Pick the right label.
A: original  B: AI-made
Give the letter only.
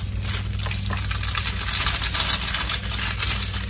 A